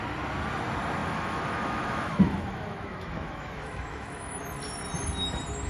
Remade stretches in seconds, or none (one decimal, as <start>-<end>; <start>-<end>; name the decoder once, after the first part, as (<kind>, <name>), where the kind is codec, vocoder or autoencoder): 1.0-4.4 (autoencoder, DAC-VAE)